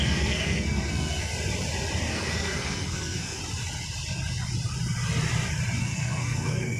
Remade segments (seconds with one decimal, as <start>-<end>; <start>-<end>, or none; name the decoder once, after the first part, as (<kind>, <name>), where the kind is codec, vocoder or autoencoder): 0.0-1.3 (codec, SNAC); 2.1-3.4; 5.8-6.8